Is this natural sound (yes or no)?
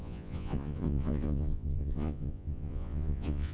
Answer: no